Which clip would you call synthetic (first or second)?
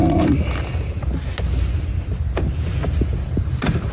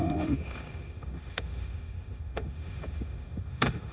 second